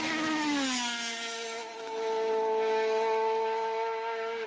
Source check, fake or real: fake